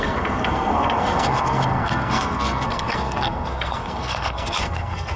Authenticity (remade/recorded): remade